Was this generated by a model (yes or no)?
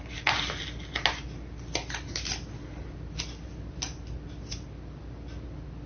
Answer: no